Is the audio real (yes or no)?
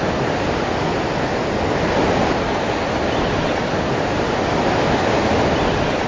yes